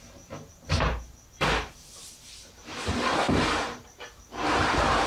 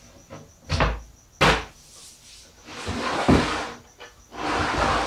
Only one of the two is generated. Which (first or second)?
first